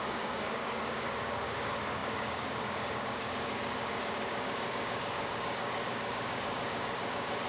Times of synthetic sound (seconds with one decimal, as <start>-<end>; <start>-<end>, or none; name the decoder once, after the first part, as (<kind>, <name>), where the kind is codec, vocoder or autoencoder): 0.0-7.5 (codec, DAC)